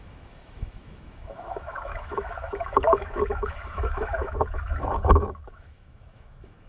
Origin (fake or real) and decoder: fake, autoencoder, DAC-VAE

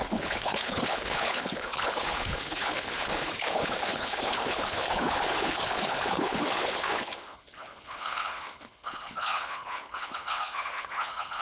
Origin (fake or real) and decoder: fake, codec, HILCodec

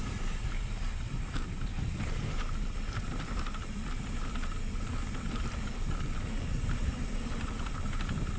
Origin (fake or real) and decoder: fake, vocoder, BigVGAN v2